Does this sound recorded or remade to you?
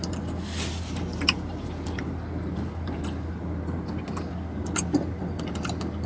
recorded